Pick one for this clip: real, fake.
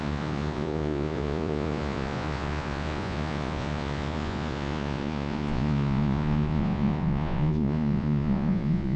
fake